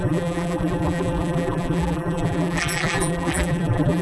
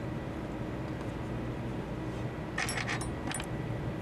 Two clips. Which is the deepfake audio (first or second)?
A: first